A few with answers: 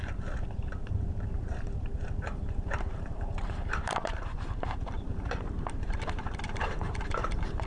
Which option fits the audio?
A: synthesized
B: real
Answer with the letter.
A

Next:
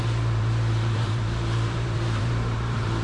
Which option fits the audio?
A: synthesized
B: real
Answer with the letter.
A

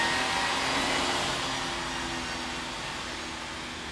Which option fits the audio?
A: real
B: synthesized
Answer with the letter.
A